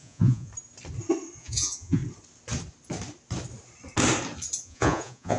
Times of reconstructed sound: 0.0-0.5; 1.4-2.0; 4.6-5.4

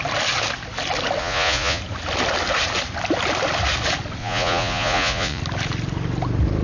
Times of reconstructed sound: 1.2-1.8; 4.2-5.4

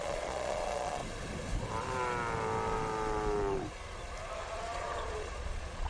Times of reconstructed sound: 0.0-1.0; 4.4-5.9

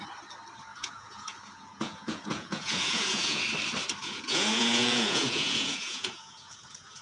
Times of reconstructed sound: 0.7-3.4; 4.0-7.0

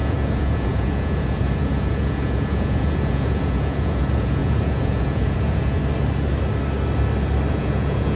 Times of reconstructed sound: 0.0-5.8; 7.5-8.2